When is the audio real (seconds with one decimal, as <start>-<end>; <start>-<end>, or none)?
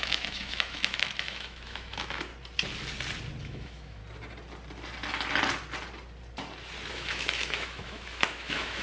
2.3-3.4; 4.0-6.9